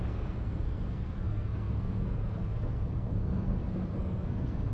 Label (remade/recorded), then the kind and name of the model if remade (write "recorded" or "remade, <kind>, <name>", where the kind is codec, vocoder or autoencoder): remade, codec, SNAC